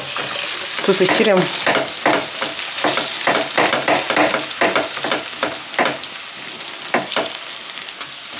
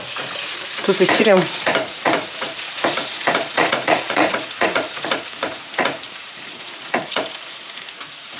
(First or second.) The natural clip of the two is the first